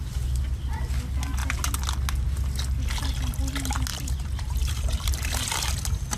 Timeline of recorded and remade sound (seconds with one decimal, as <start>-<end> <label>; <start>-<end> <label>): 0.0-3.9 recorded; 3.9-5.3 remade; 5.3-6.2 recorded